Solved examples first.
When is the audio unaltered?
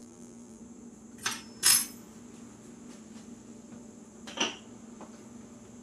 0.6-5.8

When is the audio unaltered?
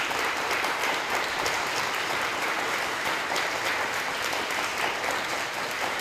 4.7-5.3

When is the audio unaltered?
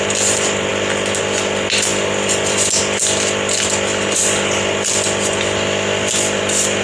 0.0-1.9; 2.8-6.8